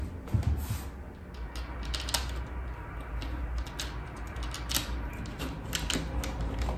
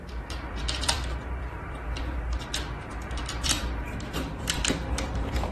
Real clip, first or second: first